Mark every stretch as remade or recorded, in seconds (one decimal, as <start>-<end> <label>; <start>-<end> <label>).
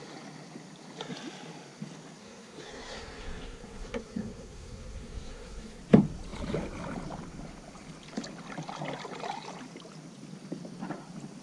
0.0-2.2 recorded; 2.2-5.8 remade; 5.8-11.4 recorded